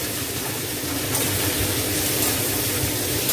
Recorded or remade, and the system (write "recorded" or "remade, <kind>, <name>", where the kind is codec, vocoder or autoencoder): recorded